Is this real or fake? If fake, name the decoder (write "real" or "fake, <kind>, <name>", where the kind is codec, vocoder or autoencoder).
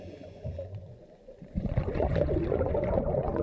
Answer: fake, vocoder, Vocos